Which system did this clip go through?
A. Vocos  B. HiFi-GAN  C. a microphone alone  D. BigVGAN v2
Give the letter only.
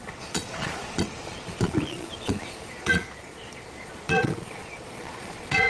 A